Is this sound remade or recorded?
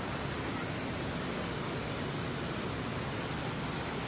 recorded